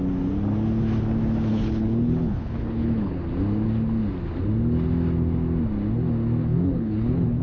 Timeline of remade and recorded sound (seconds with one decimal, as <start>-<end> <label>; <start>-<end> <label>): 0.0-1.5 recorded; 1.5-3.2 remade; 3.2-6.4 recorded; 6.4-7.4 remade